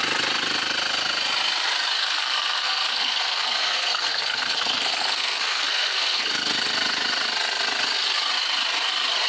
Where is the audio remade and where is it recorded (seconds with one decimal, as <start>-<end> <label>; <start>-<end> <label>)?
0.0-2.0 recorded; 2.0-6.3 remade; 6.3-9.3 recorded